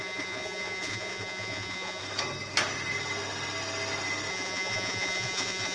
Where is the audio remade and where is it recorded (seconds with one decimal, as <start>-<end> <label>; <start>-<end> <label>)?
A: 0.0-2.0 remade; 2.0-4.3 recorded; 4.3-5.7 remade